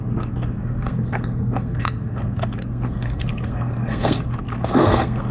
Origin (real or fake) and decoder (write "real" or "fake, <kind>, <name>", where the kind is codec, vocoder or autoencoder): fake, codec, SNAC